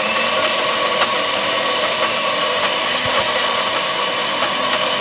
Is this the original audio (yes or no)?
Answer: yes